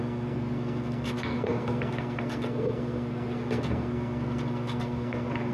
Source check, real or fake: fake